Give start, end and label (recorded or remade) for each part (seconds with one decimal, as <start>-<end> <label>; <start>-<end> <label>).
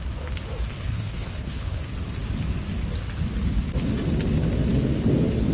0.0-0.7 recorded; 0.7-1.8 remade; 1.8-5.5 recorded